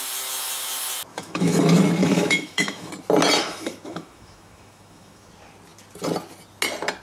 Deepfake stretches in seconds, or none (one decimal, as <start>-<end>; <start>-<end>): 1.1-1.6; 2.0-2.9; 3.4-5.3